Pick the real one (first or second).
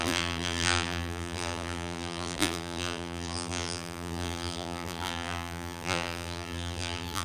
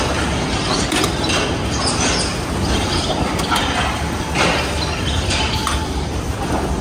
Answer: second